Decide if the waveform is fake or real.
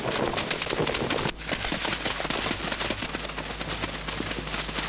real